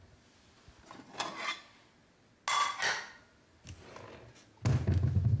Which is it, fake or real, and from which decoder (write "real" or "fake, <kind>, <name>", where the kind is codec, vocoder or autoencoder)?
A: real